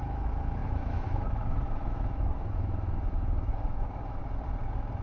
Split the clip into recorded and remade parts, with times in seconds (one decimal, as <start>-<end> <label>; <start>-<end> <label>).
0.0-4.2 remade; 4.2-5.0 recorded